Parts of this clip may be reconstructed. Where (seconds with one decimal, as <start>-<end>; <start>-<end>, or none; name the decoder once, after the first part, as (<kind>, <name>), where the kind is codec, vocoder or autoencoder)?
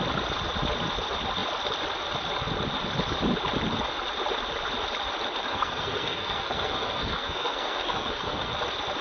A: 5.5-8.5 (codec, SNAC)